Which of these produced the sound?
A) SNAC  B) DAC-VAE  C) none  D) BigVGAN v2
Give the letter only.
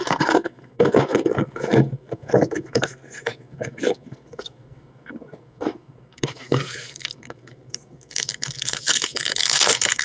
A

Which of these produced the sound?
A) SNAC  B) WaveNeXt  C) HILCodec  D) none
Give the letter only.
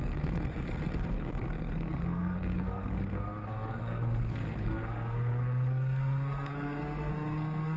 A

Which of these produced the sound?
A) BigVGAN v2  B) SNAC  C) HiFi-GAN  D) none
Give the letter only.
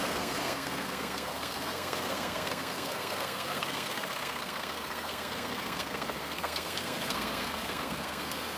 B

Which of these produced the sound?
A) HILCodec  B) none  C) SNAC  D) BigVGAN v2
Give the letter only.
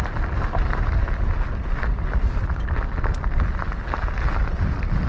B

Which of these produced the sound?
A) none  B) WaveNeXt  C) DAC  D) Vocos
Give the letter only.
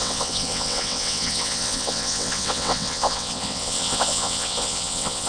B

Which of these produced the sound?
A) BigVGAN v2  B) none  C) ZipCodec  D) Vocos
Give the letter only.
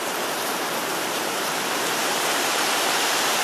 A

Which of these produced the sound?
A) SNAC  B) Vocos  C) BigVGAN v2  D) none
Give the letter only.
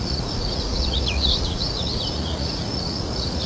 B